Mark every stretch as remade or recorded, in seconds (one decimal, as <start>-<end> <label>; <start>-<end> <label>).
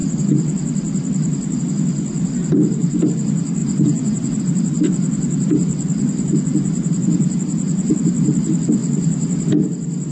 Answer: 0.0-3.6 recorded; 3.6-4.4 remade; 4.4-10.1 recorded